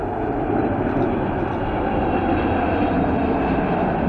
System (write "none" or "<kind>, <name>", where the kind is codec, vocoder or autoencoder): none